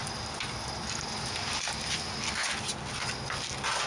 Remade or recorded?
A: recorded